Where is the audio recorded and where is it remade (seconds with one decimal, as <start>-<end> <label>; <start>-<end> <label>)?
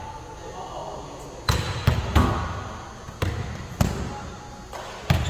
0.0-5.3 recorded